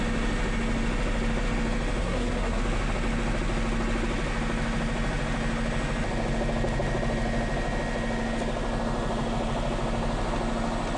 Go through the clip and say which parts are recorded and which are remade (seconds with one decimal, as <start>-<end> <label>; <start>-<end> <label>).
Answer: 0.0-2.0 recorded; 2.0-2.6 remade; 2.6-11.0 recorded